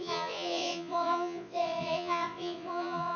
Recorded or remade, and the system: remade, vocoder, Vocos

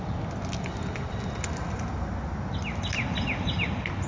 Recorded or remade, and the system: recorded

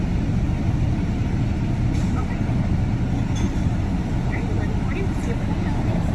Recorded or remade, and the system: recorded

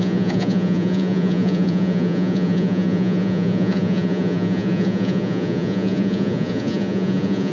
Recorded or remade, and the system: remade, vocoder, Vocos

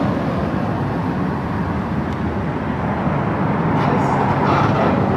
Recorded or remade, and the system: recorded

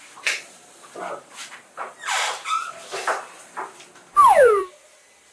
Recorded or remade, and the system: remade, vocoder, BigVGAN v2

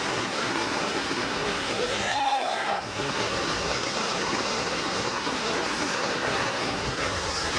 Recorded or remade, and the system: remade, codec, SNAC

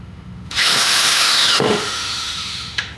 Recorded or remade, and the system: remade, autoencoder, DAC-VAE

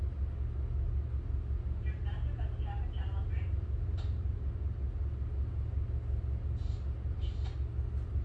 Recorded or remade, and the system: recorded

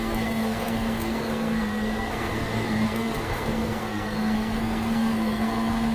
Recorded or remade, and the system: remade, codec, SNAC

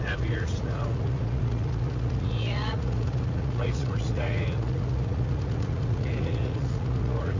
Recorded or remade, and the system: remade, vocoder, Vocos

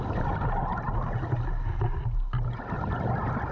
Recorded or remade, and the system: recorded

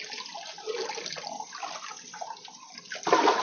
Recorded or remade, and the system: recorded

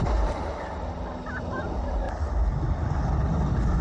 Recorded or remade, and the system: recorded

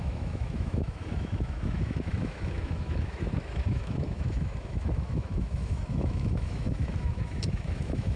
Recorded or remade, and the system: remade, autoencoder, DAC-VAE